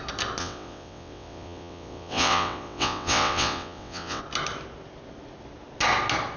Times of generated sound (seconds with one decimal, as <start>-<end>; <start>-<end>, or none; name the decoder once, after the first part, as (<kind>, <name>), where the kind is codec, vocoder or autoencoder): 0.4-4.2 (vocoder, WaveNeXt)